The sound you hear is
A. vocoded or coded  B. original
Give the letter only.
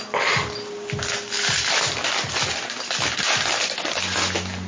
B